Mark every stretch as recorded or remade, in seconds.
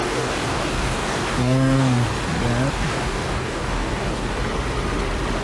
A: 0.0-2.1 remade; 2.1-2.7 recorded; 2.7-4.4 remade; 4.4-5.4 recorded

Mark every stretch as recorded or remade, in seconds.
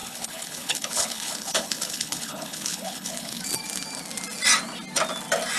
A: 0.0-3.4 remade; 3.4-5.6 recorded